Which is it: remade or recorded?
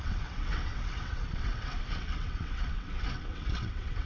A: remade